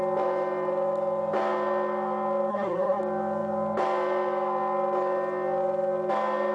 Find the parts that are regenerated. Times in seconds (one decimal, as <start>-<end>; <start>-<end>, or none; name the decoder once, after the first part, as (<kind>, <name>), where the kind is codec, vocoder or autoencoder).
2.5-3.0 (codec, SNAC)